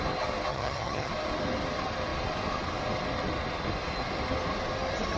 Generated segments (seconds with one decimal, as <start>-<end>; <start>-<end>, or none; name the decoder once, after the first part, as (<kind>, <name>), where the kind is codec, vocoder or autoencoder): 0.5-1.1 (vocoder, HiFi-GAN)